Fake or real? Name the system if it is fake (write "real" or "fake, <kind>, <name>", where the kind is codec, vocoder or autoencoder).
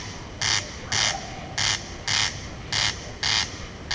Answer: real